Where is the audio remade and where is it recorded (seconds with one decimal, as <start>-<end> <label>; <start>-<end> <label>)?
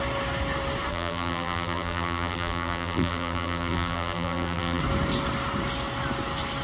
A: 0.0-0.9 recorded; 0.9-4.8 remade; 4.8-6.6 recorded